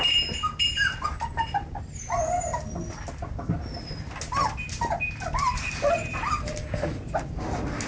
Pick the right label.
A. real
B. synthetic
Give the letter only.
A